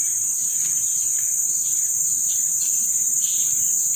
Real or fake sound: fake